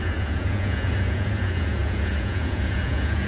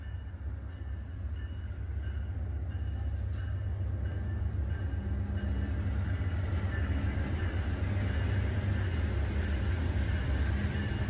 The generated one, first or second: first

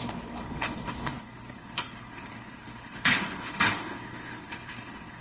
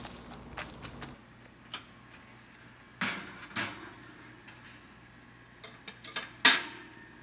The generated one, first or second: first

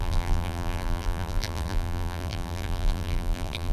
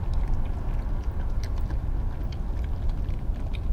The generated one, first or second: first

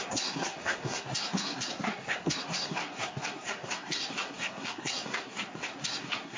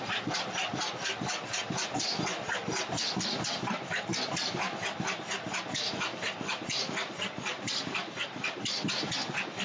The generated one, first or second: first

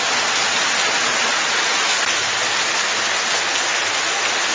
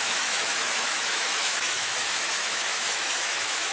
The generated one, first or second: second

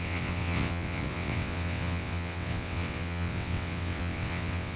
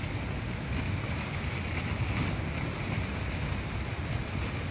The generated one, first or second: first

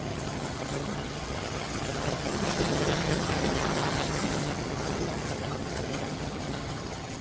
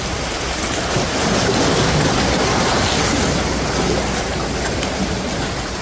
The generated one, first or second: first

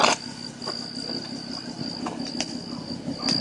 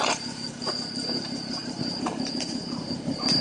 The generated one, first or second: second